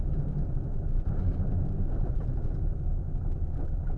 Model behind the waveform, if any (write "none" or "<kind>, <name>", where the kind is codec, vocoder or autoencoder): none